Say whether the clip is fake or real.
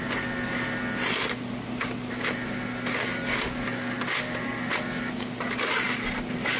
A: real